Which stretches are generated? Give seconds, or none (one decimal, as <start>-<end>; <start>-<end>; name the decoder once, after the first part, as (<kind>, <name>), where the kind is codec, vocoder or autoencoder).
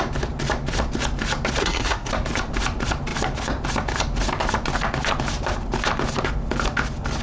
1.6-2.1 (codec, SNAC)